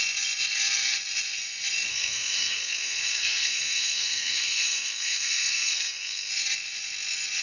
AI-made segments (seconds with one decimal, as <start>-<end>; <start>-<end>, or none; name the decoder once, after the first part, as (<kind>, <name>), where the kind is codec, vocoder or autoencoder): 1.9-6.3 (codec, SNAC)